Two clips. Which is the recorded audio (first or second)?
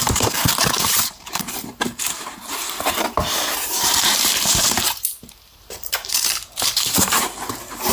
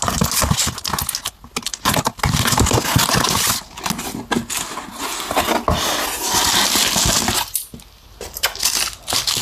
second